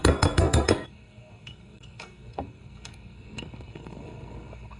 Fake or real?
fake